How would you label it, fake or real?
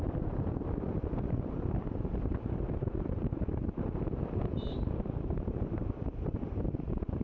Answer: fake